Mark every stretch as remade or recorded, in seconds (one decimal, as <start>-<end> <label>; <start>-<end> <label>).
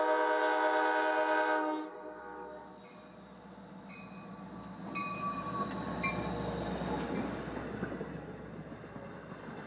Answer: 0.0-9.7 recorded